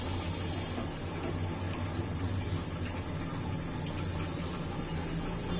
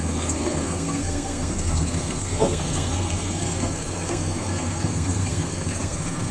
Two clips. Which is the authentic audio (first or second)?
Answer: first